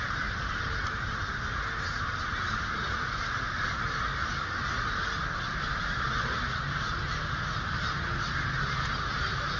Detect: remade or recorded recorded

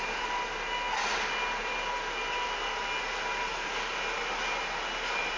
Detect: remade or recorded recorded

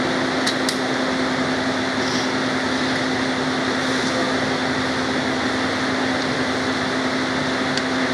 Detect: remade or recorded recorded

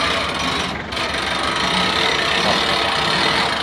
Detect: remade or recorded recorded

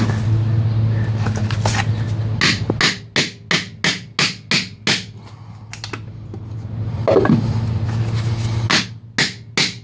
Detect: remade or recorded recorded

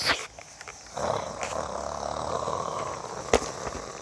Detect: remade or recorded recorded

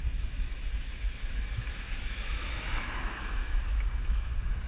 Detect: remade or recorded remade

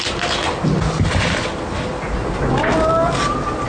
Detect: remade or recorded recorded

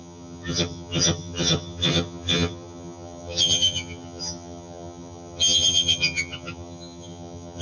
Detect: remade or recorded remade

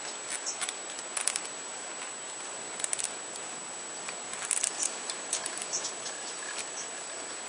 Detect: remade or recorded recorded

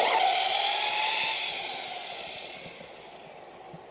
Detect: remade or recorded recorded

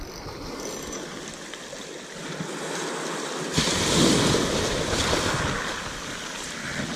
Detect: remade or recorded recorded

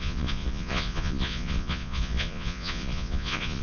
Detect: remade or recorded remade